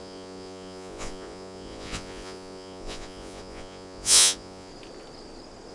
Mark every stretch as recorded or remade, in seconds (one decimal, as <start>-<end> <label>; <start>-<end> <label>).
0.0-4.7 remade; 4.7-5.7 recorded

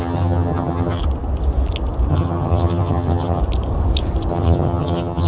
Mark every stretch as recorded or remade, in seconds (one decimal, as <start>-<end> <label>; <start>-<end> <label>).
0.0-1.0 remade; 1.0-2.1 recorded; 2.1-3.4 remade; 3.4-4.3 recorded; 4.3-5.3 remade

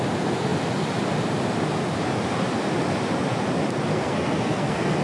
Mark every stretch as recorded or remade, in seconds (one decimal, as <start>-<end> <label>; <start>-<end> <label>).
0.0-3.9 recorded; 3.9-5.0 remade

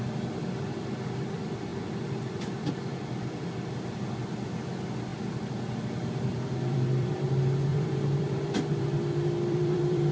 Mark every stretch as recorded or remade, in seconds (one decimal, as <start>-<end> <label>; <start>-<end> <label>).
0.0-1.7 recorded; 1.7-2.7 remade; 2.7-5.1 recorded; 5.1-7.3 remade; 7.3-7.7 recorded; 7.7-10.1 remade